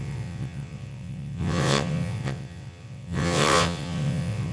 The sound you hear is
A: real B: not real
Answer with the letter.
B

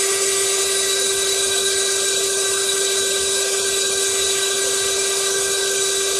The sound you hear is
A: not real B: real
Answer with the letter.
A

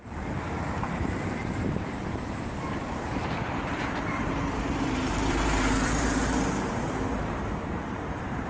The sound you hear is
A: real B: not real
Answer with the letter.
B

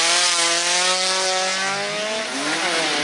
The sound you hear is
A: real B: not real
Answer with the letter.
A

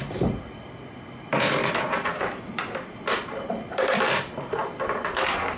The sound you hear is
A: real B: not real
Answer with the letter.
B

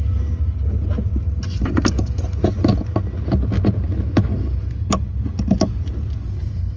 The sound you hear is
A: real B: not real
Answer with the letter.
A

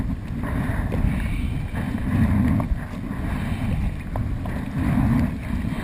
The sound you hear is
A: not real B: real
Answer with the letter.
B